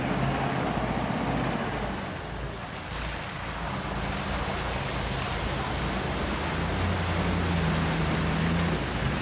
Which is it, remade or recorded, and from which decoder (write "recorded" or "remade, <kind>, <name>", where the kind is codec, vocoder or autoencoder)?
recorded